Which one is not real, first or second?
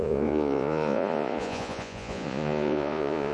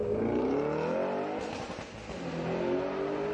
first